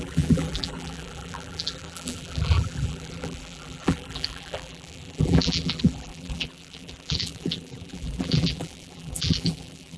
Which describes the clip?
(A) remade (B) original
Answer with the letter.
A